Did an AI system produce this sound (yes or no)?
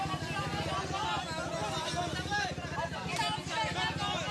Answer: no